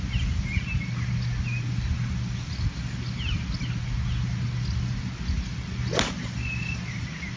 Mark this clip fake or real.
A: real